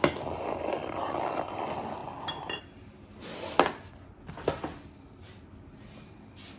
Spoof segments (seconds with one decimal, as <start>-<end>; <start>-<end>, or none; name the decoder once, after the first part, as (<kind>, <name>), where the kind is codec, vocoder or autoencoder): none

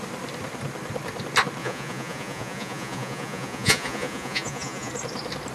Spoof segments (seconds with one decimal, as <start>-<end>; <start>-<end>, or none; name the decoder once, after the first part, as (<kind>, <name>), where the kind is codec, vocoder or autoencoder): 1.6-4.9 (vocoder, Vocos)

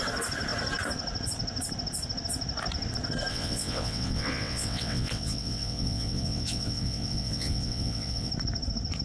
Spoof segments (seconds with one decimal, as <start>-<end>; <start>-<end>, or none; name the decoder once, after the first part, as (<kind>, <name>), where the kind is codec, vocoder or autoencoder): 3.3-8.3 (vocoder, WaveNeXt)

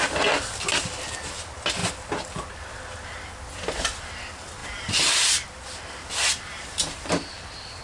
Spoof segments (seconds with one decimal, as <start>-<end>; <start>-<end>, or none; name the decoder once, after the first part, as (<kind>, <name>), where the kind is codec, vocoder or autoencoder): 4.6-7.3 (vocoder, BigVGAN v2)

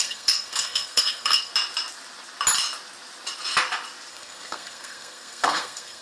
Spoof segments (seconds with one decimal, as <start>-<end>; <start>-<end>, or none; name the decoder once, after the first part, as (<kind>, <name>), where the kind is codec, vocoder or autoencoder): 0.0-1.5 (codec, SNAC); 4.1-6.0

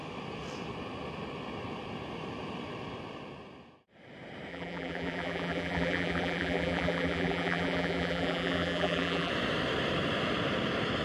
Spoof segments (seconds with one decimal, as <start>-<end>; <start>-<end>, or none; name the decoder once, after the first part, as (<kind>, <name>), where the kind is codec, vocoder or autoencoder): 4.5-9.3 (vocoder, BigVGAN v2)

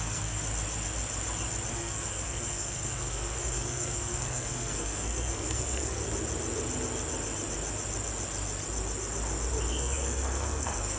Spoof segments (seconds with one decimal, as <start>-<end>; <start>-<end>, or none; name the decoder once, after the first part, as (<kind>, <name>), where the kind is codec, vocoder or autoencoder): 0.0-0.4 (codec, SNAC); 1.7-6.0; 9.7-11.0

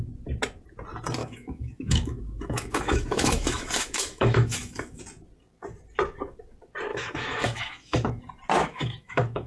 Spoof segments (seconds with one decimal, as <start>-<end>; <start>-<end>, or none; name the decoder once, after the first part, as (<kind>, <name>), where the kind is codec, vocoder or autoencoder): 1.2-5.0 (autoencoder, DAC-VAE); 6.9-8.2; 8.6-9.5